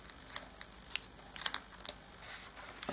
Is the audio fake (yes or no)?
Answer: no